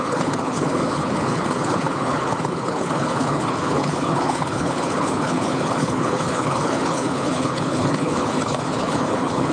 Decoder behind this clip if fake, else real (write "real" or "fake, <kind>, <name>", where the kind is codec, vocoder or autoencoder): fake, codec, HILCodec